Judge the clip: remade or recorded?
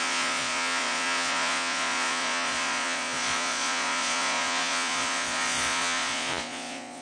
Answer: remade